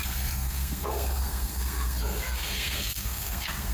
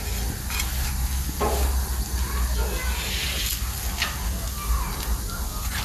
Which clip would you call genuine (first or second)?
second